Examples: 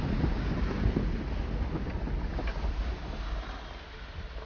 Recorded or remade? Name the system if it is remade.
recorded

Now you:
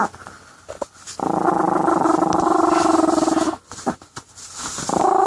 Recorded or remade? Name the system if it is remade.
recorded